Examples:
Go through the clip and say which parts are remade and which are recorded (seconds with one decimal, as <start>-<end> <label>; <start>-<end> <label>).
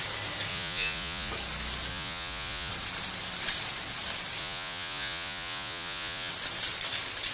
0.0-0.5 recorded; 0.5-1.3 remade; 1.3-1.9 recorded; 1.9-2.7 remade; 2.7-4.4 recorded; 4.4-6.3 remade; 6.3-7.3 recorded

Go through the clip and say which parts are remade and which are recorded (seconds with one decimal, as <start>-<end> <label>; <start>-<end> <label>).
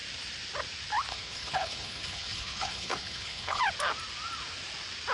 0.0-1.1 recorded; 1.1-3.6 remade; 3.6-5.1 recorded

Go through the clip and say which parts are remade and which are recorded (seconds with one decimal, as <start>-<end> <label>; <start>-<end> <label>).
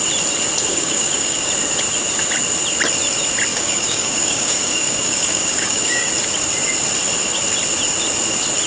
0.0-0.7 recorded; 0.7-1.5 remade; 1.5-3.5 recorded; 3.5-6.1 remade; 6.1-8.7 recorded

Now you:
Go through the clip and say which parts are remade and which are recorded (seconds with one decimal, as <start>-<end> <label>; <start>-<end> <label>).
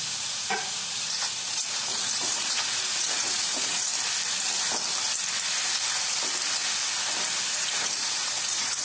0.0-3.9 remade; 3.9-7.5 recorded; 7.5-8.8 remade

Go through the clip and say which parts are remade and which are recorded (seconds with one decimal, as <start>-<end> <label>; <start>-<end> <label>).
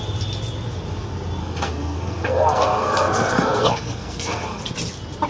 0.0-1.4 recorded; 1.4-4.6 remade; 4.6-5.3 recorded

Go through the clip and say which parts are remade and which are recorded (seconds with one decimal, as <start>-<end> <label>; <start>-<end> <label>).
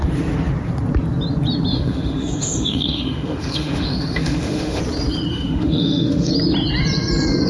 0.0-1.7 recorded; 1.7-4.8 remade; 4.8-5.3 recorded; 5.3-6.3 remade; 6.3-7.5 recorded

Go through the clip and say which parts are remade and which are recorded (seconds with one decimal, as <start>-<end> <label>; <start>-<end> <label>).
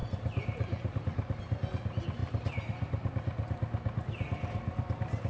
0.0-1.4 remade; 1.4-5.3 recorded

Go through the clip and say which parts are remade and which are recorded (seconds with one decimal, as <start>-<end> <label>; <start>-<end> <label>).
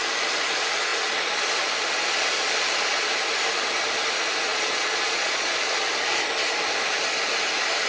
0.0-4.5 recorded; 4.5-5.6 remade; 5.6-7.9 recorded